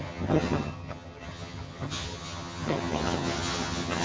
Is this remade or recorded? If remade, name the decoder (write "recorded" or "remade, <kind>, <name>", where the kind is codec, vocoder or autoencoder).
remade, vocoder, HiFi-GAN